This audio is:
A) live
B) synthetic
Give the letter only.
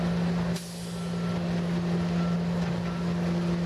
A